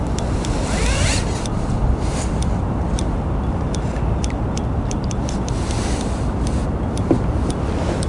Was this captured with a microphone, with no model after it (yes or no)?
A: yes